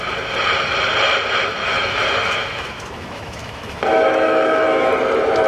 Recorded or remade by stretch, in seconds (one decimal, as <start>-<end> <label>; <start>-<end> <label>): 0.0-1.6 recorded; 1.6-4.9 remade; 4.9-5.5 recorded